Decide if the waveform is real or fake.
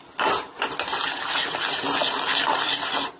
real